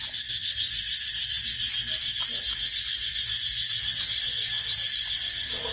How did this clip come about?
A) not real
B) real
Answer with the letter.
B